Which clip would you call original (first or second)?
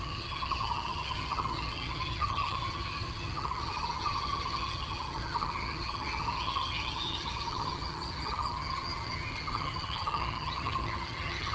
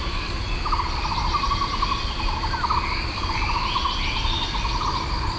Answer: second